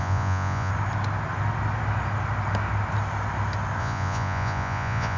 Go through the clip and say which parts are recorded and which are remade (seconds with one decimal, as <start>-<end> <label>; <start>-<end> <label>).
0.0-0.7 remade; 0.7-3.8 recorded; 3.8-5.2 remade

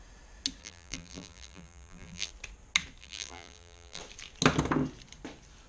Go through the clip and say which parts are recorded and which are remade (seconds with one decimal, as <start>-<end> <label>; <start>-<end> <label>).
0.0-0.6 recorded; 0.6-2.3 remade; 2.3-3.0 recorded; 3.0-4.0 remade; 4.0-5.7 recorded